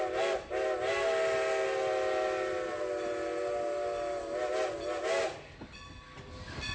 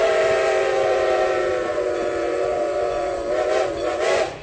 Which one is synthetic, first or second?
second